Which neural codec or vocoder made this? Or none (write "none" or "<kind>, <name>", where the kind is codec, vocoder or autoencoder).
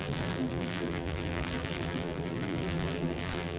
vocoder, BigVGAN v2